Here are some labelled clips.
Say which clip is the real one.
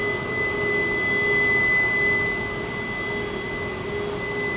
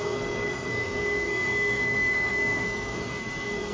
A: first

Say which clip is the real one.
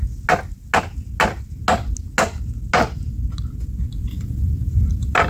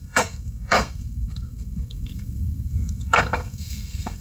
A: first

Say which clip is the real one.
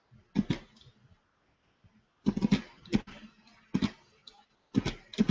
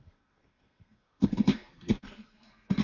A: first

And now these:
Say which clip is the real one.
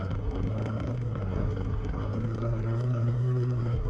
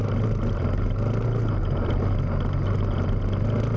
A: second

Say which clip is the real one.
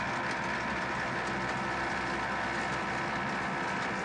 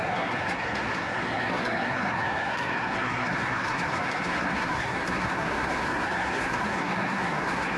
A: first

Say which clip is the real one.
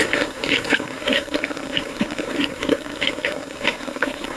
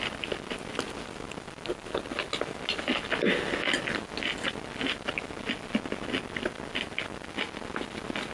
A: second